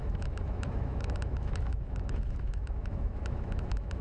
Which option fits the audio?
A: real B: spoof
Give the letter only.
B